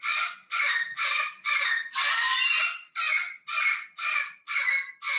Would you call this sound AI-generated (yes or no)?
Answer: no